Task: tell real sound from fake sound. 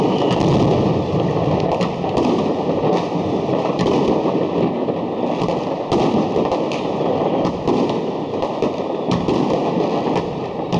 real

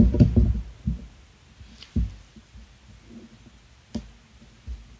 real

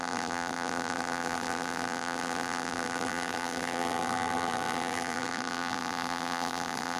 fake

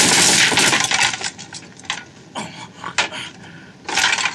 real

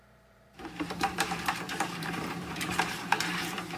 fake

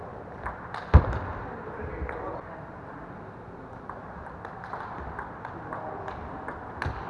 real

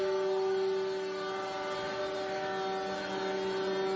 real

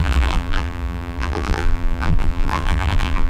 fake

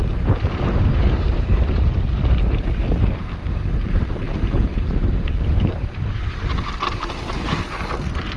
fake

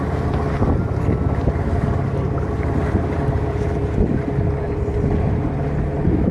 real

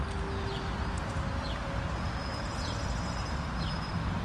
real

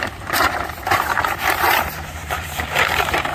fake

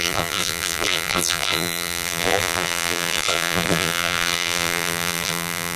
fake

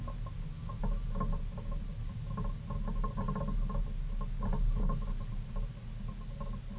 real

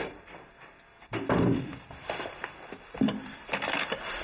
fake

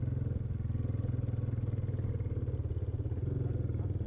real